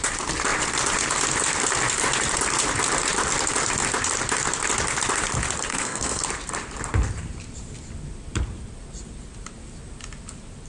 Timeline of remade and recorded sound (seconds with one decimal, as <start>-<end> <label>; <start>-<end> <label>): 0.0-5.7 recorded; 5.7-6.2 remade; 6.2-10.7 recorded

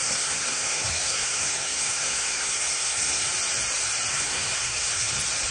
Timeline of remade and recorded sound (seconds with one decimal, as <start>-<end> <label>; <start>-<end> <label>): 0.0-3.3 remade; 3.3-4.1 recorded; 4.1-5.1 remade; 5.1-5.5 recorded

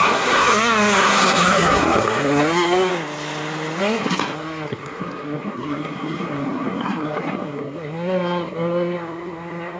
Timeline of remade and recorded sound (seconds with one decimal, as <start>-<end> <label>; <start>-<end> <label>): 0.0-2.9 remade; 2.9-3.8 recorded; 3.8-9.8 remade

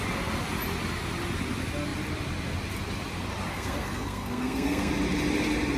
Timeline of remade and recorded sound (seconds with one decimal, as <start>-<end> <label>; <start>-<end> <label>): 0.0-3.5 recorded; 3.5-4.9 remade; 4.9-5.8 recorded

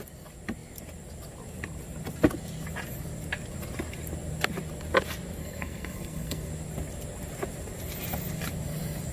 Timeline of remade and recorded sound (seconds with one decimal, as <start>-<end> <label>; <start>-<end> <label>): 0.0-5.4 recorded; 5.4-6.5 remade; 6.5-9.1 recorded

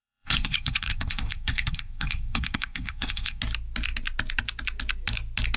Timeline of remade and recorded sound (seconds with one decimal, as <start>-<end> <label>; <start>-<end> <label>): 0.0-3.4 remade; 3.4-5.6 recorded